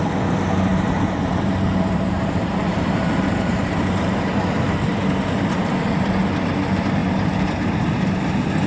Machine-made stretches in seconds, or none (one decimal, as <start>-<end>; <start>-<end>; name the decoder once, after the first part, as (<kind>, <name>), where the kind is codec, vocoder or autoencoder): 0.7-4.4 (vocoder, BigVGAN v2); 5.6-6.2; 7.0-7.8